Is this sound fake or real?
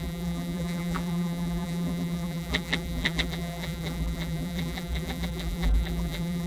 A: fake